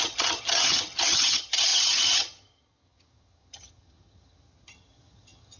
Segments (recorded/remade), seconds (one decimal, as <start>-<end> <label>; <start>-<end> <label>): 0.0-5.6 remade

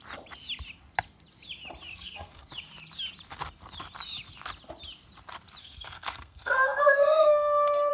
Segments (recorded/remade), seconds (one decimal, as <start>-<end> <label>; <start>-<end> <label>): 0.0-1.9 recorded; 1.9-2.5 remade; 2.5-5.6 recorded; 5.6-7.9 remade

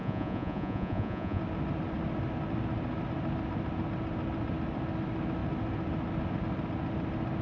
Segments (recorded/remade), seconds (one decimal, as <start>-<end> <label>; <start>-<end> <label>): 0.0-1.4 remade; 1.4-7.4 recorded

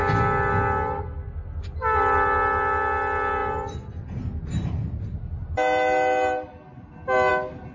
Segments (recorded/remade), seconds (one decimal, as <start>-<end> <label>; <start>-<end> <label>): 0.0-7.7 recorded

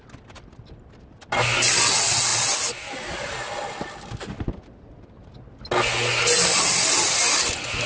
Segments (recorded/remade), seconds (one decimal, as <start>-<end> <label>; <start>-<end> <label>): 0.0-7.9 recorded